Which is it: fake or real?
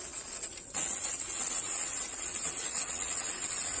fake